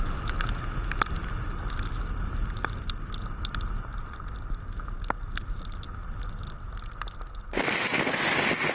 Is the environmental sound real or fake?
real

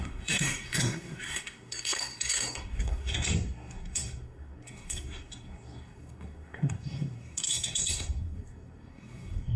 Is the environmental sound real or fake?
fake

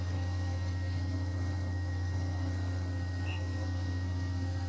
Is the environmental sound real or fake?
fake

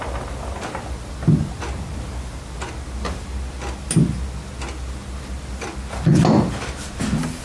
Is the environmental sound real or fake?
real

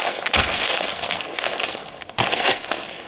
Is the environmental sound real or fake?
fake